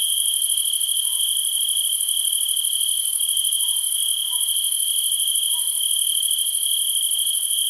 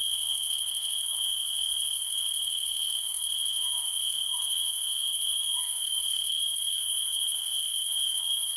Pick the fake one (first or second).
second